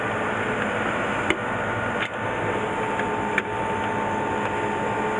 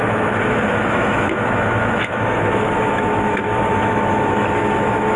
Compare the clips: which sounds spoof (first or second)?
second